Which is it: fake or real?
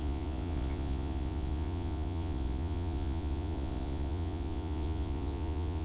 fake